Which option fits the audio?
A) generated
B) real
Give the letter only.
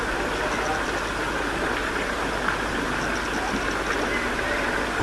B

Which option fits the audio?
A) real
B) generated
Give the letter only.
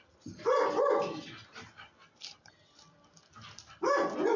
A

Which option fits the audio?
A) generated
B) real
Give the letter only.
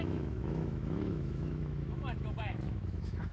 A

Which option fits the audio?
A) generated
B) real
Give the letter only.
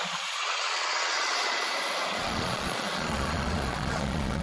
A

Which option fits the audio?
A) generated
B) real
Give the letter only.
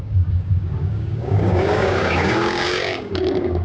A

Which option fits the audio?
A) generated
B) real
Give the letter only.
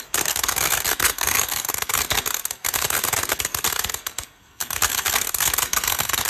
A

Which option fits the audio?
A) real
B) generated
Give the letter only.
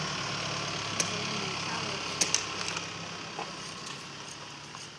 A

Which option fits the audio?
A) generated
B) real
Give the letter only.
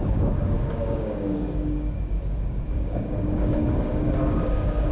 A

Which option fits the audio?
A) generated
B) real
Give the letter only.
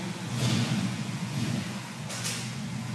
A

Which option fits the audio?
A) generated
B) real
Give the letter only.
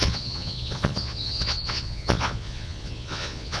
A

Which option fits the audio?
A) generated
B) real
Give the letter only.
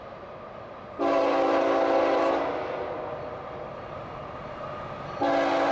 B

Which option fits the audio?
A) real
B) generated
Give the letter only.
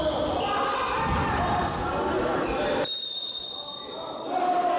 A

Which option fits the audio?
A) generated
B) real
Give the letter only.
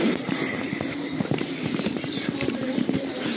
A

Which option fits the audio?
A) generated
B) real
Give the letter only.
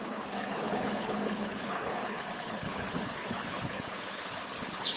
A